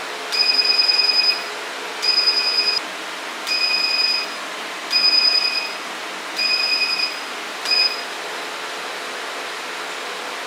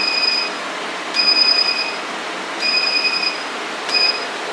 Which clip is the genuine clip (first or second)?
first